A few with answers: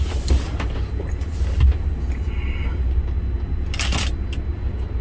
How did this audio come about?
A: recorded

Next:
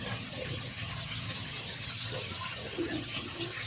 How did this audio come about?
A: remade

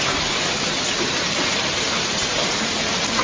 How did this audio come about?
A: recorded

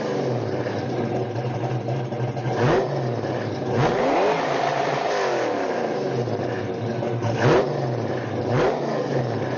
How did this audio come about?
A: recorded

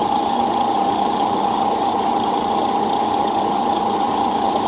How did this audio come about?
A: remade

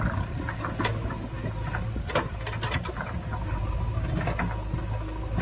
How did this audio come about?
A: recorded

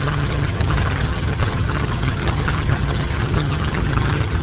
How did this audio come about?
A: remade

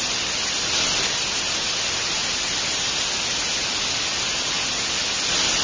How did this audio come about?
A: recorded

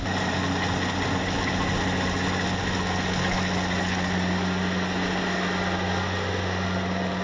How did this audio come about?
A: recorded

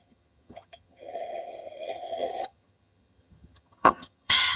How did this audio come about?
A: remade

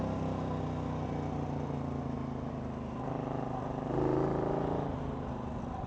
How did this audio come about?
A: recorded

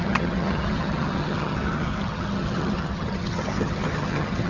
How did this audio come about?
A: remade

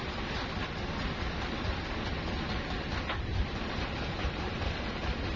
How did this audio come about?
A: recorded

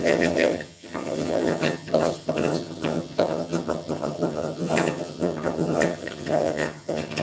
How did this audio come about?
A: remade